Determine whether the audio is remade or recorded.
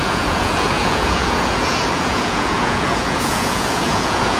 remade